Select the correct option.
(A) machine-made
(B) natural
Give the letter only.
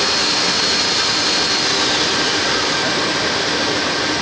B